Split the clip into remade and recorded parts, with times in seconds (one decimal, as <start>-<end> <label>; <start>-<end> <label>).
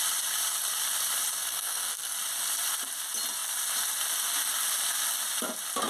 0.0-1.5 recorded; 1.5-2.1 remade; 2.1-5.9 recorded